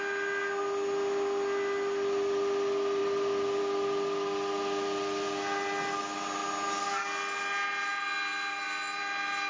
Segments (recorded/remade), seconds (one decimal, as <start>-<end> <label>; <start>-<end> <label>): 0.0-9.5 recorded